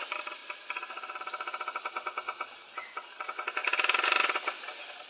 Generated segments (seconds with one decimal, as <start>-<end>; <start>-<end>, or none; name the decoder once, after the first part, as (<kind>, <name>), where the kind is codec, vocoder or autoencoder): 0.0-0.4 (vocoder, BigVGAN v2); 3.2-5.1